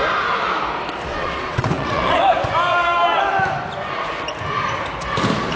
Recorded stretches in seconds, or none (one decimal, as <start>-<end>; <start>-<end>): 0.0-1.1; 2.5-5.6

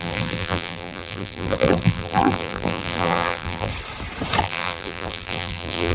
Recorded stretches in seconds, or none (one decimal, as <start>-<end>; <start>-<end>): 3.7-4.4

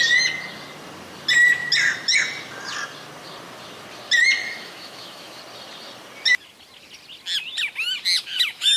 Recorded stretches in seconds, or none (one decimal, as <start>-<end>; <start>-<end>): 0.0-4.4; 5.4-8.2

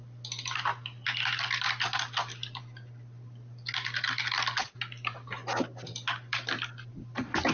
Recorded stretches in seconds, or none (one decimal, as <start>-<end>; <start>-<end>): 0.0-7.5

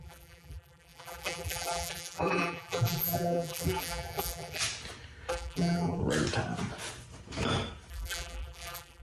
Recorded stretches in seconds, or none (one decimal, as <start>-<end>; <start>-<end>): 4.6-5.3; 6.0-7.9

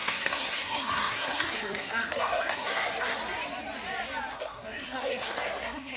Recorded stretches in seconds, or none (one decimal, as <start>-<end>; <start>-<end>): 3.2-4.3

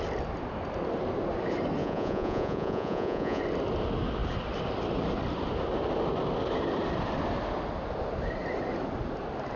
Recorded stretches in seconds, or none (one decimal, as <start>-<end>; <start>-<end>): 0.0-1.8; 3.4-9.6